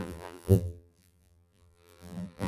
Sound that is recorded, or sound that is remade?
remade